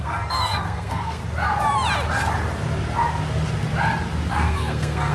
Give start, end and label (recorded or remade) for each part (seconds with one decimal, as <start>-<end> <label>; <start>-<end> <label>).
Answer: 0.0-1.2 remade; 1.2-4.3 recorded; 4.3-5.1 remade